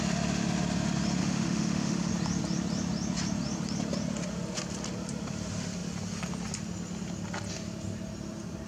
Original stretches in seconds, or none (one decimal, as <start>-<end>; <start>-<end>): 0.0-1.2; 2.1-8.7